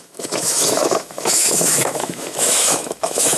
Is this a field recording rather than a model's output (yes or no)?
no